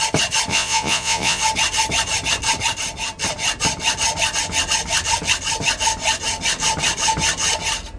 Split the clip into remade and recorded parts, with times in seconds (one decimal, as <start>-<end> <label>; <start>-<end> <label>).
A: 0.0-0.5 recorded; 0.5-1.4 remade; 1.4-8.0 recorded